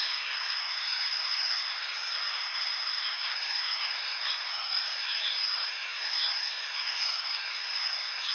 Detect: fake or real fake